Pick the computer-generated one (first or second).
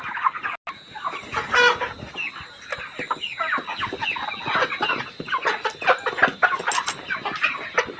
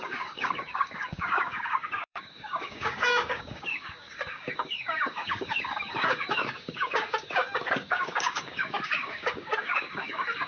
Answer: second